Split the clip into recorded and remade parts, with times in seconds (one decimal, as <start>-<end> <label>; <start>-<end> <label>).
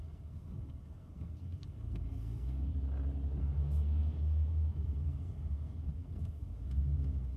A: 0.0-2.7 remade; 2.7-3.4 recorded; 3.4-7.4 remade